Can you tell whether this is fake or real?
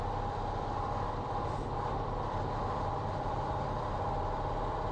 fake